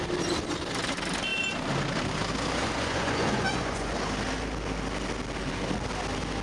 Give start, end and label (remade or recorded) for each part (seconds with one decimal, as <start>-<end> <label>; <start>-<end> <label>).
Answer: 0.0-2.6 recorded; 2.6-3.9 remade; 3.9-6.4 recorded

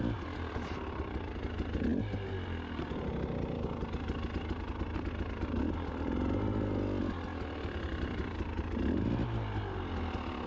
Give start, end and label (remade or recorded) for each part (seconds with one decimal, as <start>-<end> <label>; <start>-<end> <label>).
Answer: 0.0-10.5 recorded

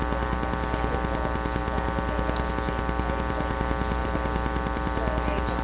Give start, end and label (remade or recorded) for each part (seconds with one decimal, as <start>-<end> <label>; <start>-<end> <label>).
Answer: 0.0-5.6 recorded

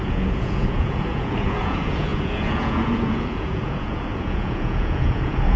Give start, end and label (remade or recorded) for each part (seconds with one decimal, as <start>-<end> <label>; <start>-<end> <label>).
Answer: 0.0-5.6 remade

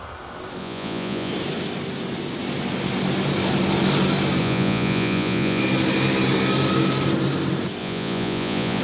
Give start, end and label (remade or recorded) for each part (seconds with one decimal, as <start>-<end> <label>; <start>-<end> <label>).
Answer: 0.0-0.6 recorded; 0.6-1.3 remade; 1.3-4.4 recorded; 4.4-5.6 remade; 5.6-7.8 recorded; 7.8-8.8 remade

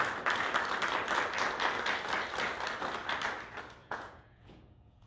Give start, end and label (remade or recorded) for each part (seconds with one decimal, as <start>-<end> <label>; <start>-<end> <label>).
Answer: 0.0-3.8 recorded; 3.8-5.1 remade

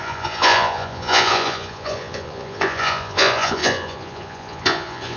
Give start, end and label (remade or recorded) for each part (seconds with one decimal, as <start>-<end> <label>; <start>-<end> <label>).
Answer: 0.0-5.2 remade